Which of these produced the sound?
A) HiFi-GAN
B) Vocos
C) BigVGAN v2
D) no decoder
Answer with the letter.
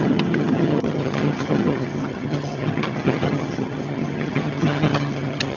A